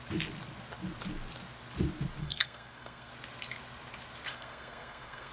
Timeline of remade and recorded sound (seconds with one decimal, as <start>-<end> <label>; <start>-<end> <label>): 0.0-2.2 recorded; 2.2-3.1 remade; 3.1-4.3 recorded; 4.3-5.3 remade